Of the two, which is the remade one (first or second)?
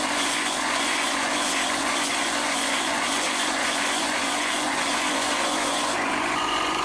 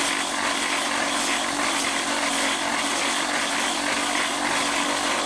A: first